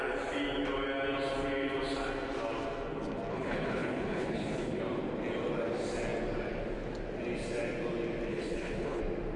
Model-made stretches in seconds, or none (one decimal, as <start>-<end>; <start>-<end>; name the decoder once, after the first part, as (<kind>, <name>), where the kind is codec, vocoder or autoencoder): 3.3-4.8 (codec, HILCodec); 8.3-9.0